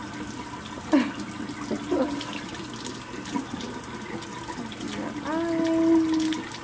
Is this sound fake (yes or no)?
no